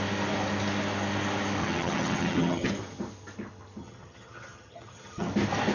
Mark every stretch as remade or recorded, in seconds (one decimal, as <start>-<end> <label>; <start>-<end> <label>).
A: 0.0-1.6 recorded; 1.6-2.7 remade; 2.7-3.8 recorded; 3.8-5.3 remade; 5.3-5.7 recorded